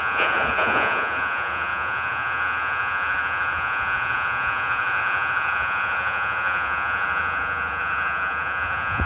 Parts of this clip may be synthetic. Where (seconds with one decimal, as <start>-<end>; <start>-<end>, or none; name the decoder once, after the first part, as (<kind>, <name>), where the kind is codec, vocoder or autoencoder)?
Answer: 0.0-9.1 (vocoder, Vocos)